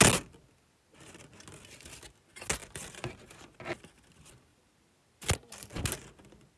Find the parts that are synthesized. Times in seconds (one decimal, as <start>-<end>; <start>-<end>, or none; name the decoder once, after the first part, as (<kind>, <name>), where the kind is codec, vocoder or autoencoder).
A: 2.6-3.2 (vocoder, BigVGAN v2)